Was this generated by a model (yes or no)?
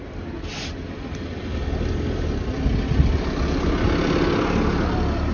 no